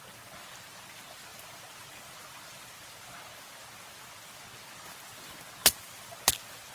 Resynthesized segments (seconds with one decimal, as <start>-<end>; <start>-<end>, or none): 1.3-4.4; 5.6-6.3